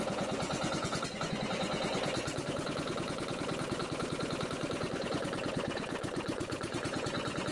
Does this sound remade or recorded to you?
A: remade